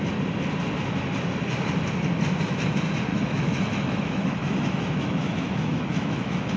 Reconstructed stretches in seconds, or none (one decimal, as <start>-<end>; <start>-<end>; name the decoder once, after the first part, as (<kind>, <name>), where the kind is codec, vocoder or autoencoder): 3.1-6.6 (autoencoder, DAC-VAE)